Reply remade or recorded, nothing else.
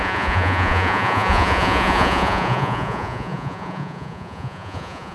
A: remade